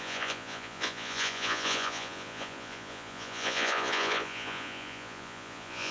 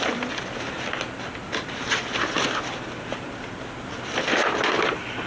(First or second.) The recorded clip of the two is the second